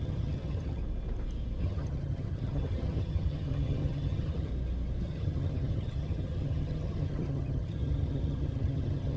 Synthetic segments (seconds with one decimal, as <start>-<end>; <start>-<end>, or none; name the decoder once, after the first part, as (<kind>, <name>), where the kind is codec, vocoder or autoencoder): 0.0-0.8 (vocoder, HiFi-GAN); 1.6-4.5; 5.0-9.2

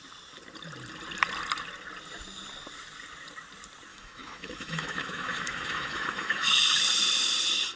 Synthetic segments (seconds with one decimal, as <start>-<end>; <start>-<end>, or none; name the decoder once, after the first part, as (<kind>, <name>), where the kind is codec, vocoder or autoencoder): 3.9-6.6 (autoencoder, DAC-VAE)

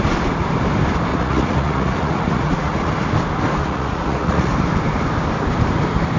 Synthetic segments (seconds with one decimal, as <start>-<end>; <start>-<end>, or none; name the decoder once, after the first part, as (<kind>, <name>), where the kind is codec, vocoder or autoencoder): 1.1-2.9 (vocoder, Vocos); 3.6-4.5